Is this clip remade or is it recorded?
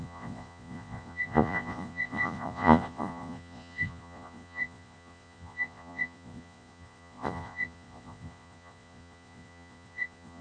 remade